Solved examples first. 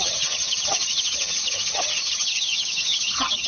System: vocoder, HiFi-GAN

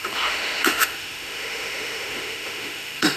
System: autoencoder, DAC-VAE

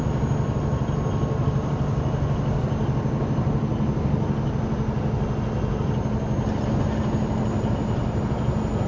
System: none